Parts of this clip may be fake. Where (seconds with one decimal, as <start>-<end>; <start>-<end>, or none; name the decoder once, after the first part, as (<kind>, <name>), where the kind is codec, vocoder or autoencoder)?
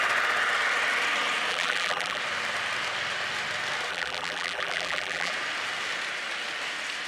1.5-2.2 (vocoder, BigVGAN v2); 3.9-5.3